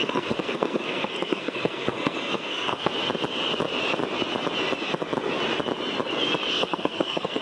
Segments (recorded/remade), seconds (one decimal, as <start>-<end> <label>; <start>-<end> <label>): 0.0-2.9 remade; 2.9-6.5 recorded; 6.5-7.4 remade